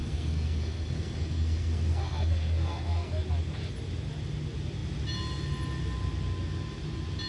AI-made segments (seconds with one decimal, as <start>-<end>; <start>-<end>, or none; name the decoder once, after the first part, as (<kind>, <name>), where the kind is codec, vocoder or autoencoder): 0.0-3.2 (codec, SNAC)